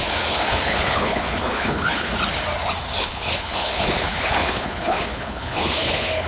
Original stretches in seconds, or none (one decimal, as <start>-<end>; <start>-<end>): 2.1-3.0